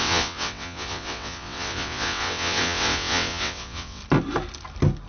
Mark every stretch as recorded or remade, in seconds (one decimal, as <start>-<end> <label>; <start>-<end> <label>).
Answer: 0.0-4.0 remade; 4.0-5.1 recorded